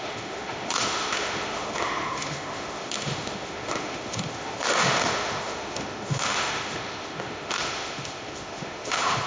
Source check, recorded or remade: remade